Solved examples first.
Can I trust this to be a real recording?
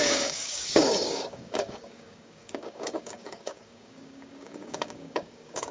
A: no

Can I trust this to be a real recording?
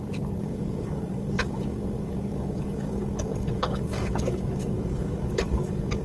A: no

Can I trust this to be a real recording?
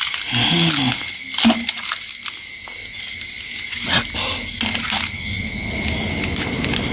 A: yes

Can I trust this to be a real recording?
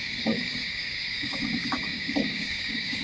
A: no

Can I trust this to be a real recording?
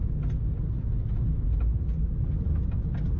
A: yes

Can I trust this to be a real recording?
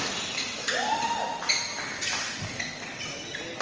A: yes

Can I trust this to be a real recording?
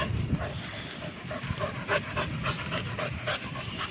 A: yes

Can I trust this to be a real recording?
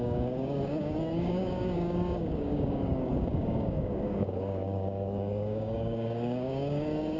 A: no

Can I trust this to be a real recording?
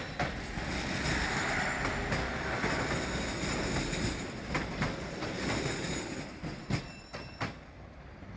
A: yes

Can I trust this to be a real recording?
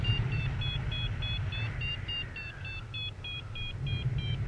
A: yes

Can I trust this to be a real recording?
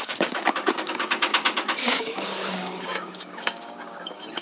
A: no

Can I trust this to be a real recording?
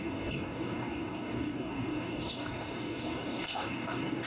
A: no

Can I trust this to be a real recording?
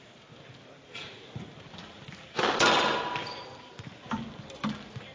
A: yes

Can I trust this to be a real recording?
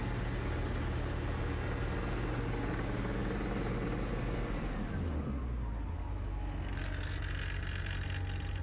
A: yes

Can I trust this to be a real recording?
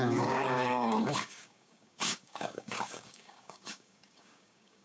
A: no